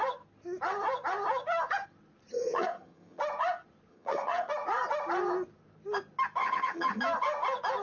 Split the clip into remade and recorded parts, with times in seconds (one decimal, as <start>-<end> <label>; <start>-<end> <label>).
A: 0.0-2.3 recorded; 2.3-3.2 remade; 3.2-3.9 recorded; 3.9-4.5 remade; 4.5-6.4 recorded; 6.4-7.0 remade; 7.0-7.8 recorded